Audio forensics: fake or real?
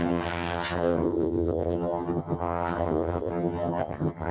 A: fake